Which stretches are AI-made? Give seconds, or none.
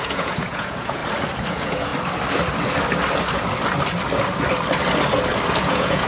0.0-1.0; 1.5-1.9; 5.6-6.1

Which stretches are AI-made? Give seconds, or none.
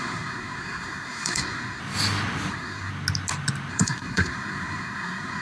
0.0-1.8; 2.5-2.9; 3.7-5.4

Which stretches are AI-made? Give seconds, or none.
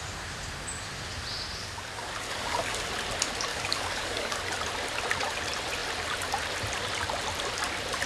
1.6-2.9; 3.5-4.4